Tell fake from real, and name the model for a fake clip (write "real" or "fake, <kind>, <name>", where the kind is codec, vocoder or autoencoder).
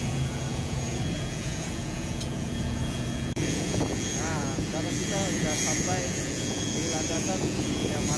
fake, vocoder, Vocos